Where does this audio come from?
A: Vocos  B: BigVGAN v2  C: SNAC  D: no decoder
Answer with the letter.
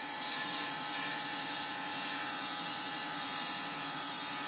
A